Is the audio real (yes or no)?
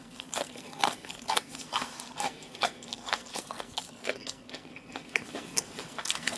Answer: no